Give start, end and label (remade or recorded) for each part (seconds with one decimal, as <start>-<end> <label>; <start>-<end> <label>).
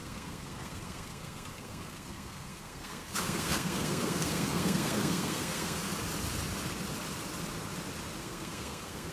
0.0-5.9 remade; 5.9-8.2 recorded; 8.2-9.1 remade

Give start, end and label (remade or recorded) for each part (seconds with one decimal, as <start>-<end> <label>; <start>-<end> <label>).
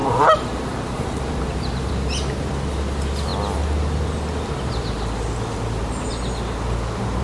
0.0-1.9 remade; 1.9-7.2 recorded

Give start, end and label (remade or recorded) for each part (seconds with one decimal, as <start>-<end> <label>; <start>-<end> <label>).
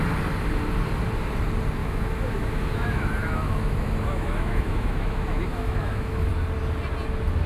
0.0-1.8 recorded; 1.8-6.3 remade; 6.3-7.5 recorded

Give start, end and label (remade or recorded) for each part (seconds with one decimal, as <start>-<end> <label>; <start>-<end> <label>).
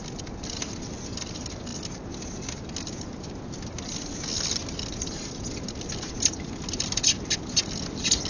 0.0-8.3 recorded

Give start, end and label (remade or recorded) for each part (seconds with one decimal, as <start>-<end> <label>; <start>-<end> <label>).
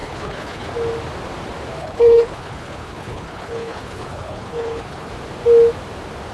0.0-0.7 remade; 0.7-1.8 recorded; 1.8-5.1 remade; 5.1-6.3 recorded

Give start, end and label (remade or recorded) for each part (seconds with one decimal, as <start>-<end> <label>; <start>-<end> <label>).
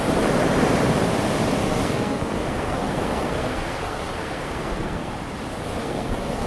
0.0-1.6 recorded; 1.6-5.1 remade; 5.1-5.8 recorded; 5.8-6.5 remade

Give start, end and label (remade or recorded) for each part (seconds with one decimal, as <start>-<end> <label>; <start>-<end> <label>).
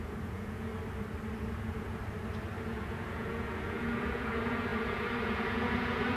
0.0-0.7 remade; 0.7-1.4 recorded; 1.4-2.0 remade; 2.0-2.6 recorded; 2.6-6.2 remade